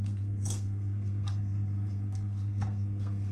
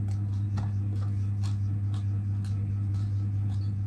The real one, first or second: second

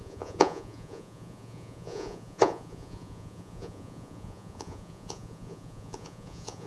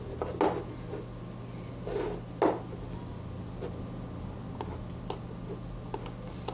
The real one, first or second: second